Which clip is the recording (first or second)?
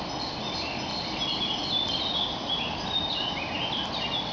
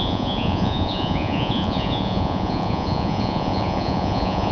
first